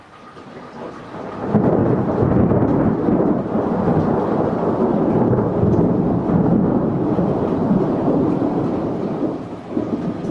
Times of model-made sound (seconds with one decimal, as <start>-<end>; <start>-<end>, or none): 0.0-1.8; 6.6-10.3